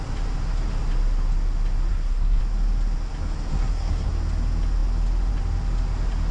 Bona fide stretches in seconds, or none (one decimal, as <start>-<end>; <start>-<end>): 0.0-1.9; 2.4-3.5; 4.1-6.3